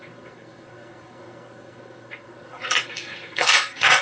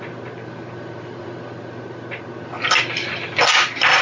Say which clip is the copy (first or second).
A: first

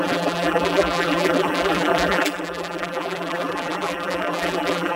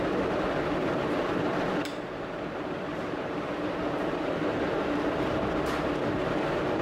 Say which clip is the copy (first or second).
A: first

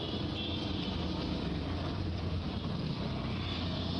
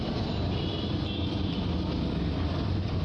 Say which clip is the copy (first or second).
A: second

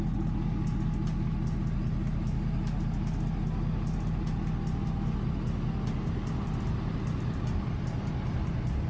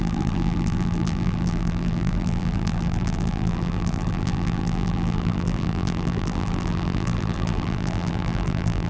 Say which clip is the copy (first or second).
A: second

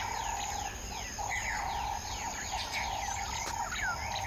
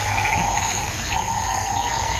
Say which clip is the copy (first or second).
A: second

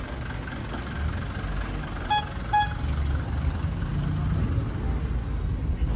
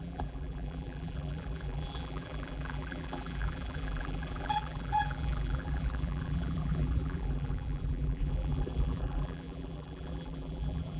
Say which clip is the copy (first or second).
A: second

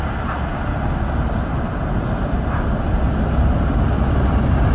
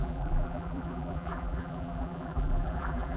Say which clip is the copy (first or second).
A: second